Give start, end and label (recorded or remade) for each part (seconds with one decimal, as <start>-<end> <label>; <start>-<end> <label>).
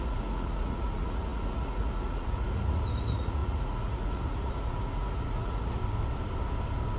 0.0-5.8 remade; 5.8-7.0 recorded